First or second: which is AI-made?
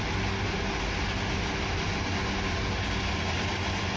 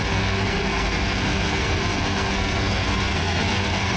second